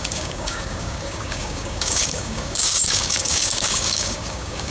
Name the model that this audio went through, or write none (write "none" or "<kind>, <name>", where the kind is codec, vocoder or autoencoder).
codec, DAC